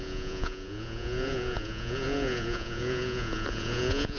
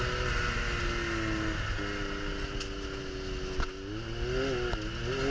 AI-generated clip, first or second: first